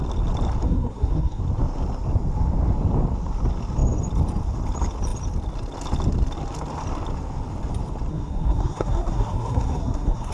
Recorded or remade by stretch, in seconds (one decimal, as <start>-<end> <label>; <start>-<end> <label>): 0.0-0.6 recorded; 0.6-1.4 remade; 1.4-8.1 recorded; 8.1-10.3 remade